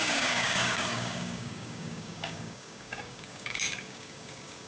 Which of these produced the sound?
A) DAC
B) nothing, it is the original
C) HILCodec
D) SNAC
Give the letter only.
A